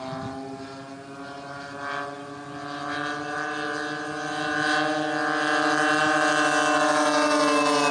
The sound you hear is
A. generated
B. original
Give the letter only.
B